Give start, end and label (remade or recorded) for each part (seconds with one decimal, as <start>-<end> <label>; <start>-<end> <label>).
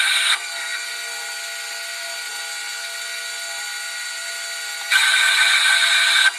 0.0-6.4 recorded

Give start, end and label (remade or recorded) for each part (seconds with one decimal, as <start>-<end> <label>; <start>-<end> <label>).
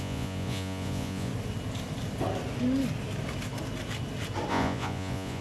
0.0-1.3 remade; 1.3-4.5 recorded; 4.5-5.4 remade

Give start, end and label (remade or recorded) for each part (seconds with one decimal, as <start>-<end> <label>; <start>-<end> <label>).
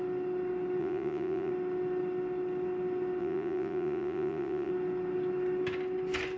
0.0-0.8 recorded; 0.8-1.5 remade; 1.5-3.2 recorded; 3.2-4.7 remade; 4.7-6.4 recorded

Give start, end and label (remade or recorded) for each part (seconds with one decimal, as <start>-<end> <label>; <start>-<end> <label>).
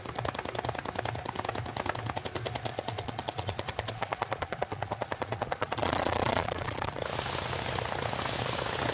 0.0-2.7 recorded; 2.7-7.0 remade; 7.0-8.9 recorded